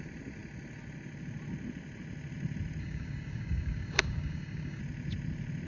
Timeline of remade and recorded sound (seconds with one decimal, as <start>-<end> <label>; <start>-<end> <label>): 0.0-2.8 recorded; 2.8-4.8 remade; 4.8-5.7 recorded